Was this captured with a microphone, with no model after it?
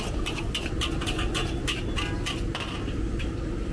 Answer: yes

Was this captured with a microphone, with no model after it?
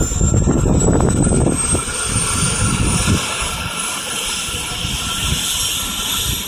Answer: yes